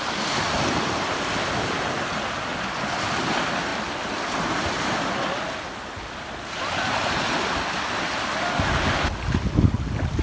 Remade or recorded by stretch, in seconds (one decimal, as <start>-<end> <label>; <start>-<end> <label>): 0.0-10.2 recorded